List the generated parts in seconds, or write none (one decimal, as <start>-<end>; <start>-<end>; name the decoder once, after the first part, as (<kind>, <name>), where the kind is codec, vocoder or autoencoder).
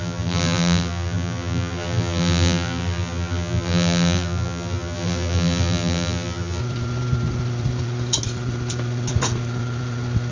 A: 0.0-6.6 (vocoder, BigVGAN v2)